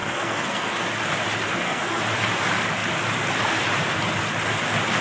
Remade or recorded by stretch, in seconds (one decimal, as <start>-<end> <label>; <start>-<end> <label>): 0.0-0.9 remade; 0.9-1.4 recorded; 1.4-2.0 remade; 2.0-5.0 recorded